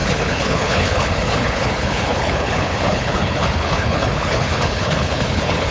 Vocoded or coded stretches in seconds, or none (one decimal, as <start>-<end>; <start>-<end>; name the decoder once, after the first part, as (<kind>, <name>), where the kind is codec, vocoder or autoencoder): 0.0-5.7 (codec, HILCodec)